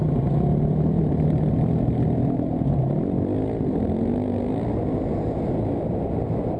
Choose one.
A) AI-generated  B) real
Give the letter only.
B